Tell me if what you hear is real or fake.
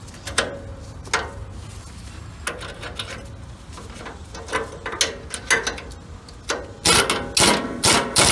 real